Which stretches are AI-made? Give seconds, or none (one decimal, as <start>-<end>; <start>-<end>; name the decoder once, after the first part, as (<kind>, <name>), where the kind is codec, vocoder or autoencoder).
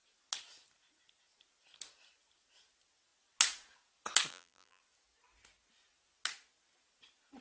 4.3-4.8 (vocoder, BigVGAN v2)